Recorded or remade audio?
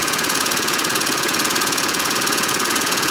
remade